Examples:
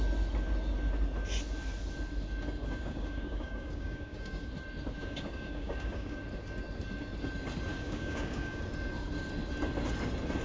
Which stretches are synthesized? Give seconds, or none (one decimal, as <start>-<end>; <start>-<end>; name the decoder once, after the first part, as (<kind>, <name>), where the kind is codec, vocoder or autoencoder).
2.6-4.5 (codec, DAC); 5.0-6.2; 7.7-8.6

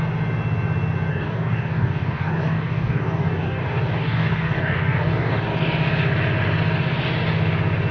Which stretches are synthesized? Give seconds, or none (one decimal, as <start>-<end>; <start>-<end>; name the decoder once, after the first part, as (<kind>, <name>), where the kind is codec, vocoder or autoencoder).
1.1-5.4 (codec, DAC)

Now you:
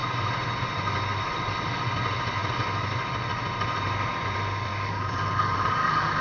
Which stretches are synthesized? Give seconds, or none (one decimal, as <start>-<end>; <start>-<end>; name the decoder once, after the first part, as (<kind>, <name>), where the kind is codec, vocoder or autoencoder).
4.7-6.2 (codec, DAC)

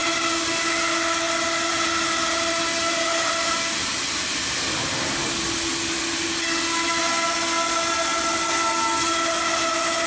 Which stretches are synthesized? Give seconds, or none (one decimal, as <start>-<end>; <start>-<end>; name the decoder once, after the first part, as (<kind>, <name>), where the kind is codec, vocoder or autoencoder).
none

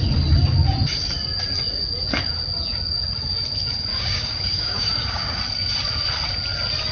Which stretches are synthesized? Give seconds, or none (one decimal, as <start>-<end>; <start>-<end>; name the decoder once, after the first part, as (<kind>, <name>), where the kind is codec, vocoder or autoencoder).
3.9-5.4 (codec, DAC)

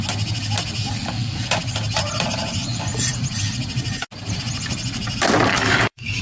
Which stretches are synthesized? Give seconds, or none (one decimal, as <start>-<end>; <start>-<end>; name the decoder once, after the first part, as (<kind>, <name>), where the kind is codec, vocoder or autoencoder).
5.5-6.2 (codec, DAC)